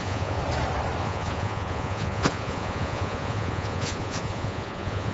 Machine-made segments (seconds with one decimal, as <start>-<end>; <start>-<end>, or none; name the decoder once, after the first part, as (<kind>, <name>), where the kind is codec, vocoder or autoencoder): 0.0-0.4 (vocoder, Vocos); 1.0-5.1